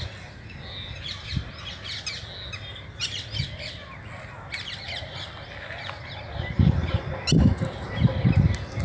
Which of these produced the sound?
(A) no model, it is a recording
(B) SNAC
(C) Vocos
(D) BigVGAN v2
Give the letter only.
A